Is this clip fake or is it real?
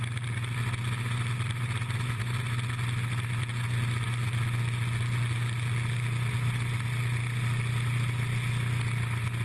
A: real